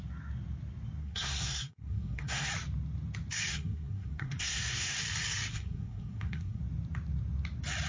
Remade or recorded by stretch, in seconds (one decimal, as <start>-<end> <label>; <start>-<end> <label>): 0.0-1.0 recorded; 1.0-2.5 remade; 2.5-3.5 recorded; 3.5-5.0 remade; 5.0-5.5 recorded; 5.5-6.6 remade; 6.6-7.9 recorded